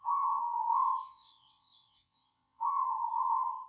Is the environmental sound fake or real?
fake